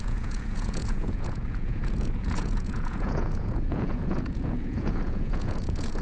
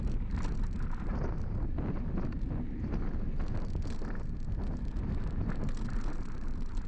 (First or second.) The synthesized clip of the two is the first